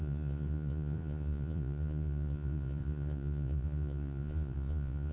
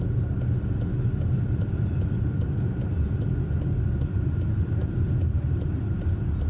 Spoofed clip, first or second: first